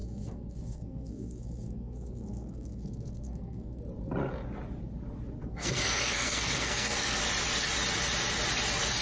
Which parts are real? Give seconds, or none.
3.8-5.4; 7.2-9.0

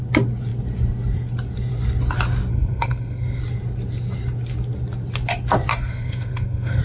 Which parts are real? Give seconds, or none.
0.0-2.5; 3.4-5.7

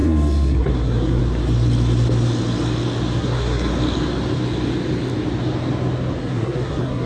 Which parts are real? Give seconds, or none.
1.2-3.2; 3.7-6.2

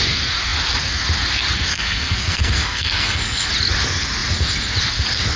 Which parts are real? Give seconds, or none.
0.0-1.7; 3.5-5.4